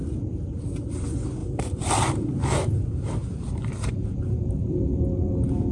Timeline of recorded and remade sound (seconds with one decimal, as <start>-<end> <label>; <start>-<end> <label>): 0.0-1.4 recorded; 1.4-4.8 remade; 4.8-5.7 recorded